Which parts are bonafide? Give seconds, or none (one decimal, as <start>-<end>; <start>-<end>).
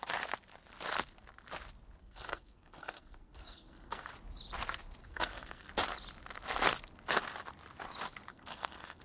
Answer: 0.0-2.0; 4.1-5.0; 5.7-8.3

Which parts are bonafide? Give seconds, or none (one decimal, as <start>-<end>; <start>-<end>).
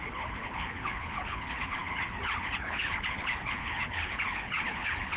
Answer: none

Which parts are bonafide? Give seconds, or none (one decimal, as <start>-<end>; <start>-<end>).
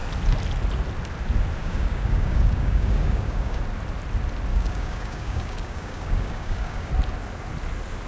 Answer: 0.0-1.6; 3.6-4.5; 6.9-8.1